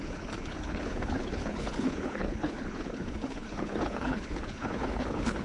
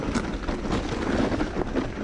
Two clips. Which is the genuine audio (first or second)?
second